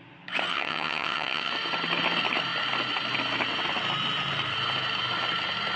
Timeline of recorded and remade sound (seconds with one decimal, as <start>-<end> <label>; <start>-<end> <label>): 0.0-0.5 recorded; 0.5-1.5 remade; 1.5-5.8 recorded